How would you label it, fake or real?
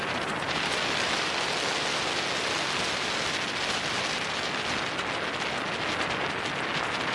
real